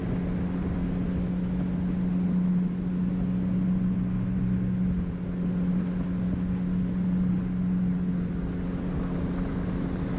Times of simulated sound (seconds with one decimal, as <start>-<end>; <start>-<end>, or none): none